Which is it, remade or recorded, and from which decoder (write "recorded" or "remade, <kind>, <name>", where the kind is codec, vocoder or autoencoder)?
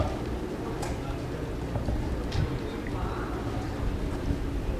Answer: remade, vocoder, BigVGAN v2